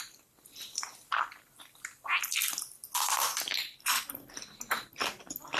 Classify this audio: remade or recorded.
recorded